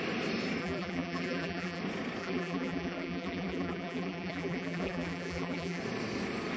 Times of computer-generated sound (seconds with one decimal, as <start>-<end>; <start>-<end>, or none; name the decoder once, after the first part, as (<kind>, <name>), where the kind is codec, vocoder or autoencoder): 0.6-1.8 (vocoder, BigVGAN v2); 2.2-5.8